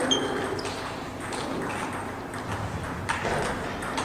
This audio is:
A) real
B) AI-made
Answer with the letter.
A